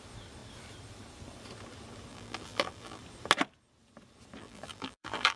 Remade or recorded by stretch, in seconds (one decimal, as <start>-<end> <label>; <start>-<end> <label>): 0.0-2.1 recorded; 2.1-3.0 remade; 3.0-4.4 recorded; 4.4-5.4 remade